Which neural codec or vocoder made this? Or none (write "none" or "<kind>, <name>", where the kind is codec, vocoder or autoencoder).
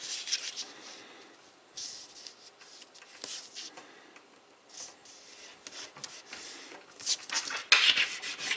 none